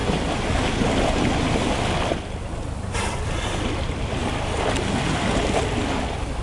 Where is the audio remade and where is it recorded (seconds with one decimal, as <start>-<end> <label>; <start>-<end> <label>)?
0.0-6.4 recorded